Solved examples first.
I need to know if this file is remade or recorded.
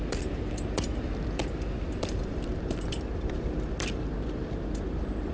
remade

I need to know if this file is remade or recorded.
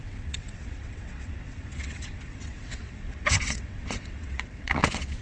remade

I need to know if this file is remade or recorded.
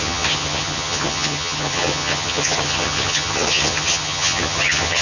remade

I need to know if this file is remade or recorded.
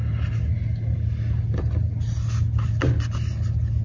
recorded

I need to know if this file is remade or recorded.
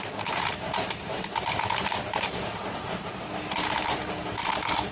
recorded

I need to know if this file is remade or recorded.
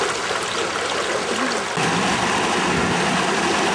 recorded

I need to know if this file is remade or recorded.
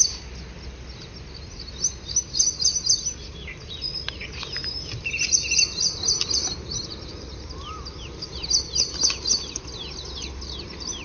recorded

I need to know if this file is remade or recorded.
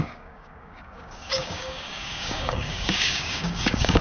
remade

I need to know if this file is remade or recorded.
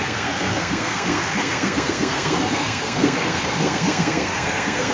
remade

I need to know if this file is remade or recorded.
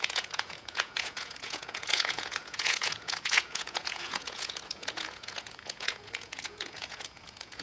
remade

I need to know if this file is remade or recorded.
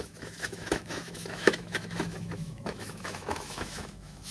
remade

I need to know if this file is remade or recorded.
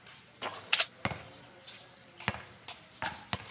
recorded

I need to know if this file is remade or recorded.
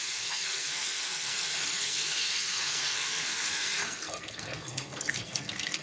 remade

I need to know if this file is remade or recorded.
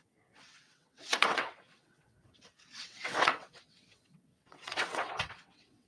remade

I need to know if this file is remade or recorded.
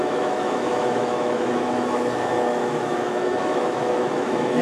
remade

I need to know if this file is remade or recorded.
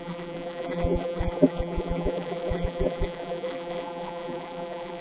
remade